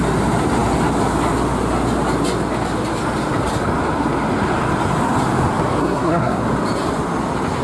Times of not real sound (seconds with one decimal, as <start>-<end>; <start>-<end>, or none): 5.8-6.4